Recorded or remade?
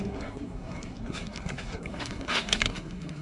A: remade